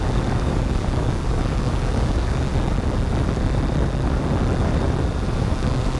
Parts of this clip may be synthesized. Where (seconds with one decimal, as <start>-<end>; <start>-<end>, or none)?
0.0-2.5; 5.4-6.0